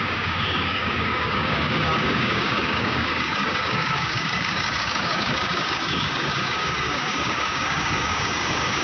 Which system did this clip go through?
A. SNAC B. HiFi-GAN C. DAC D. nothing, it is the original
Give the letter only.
C